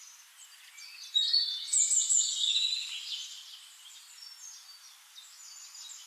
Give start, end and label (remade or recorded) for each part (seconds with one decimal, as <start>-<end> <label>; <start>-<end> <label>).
0.0-6.1 recorded